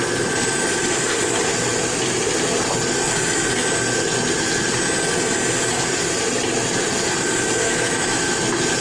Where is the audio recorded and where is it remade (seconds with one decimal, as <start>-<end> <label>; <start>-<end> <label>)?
0.0-7.6 recorded; 7.6-8.4 remade; 8.4-8.8 recorded